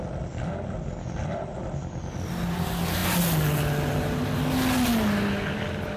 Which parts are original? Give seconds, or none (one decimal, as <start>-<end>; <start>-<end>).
0.0-6.0